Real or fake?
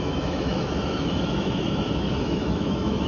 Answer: fake